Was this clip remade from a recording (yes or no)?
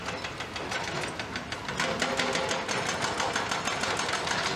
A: no